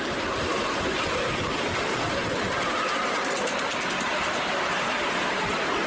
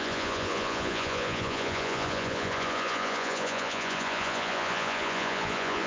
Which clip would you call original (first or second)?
first